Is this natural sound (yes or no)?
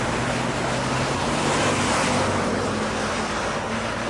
yes